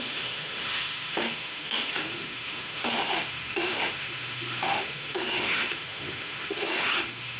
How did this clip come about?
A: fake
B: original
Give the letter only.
A